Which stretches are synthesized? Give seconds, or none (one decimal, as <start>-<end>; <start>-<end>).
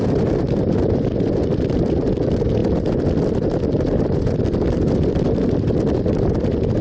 0.0-6.8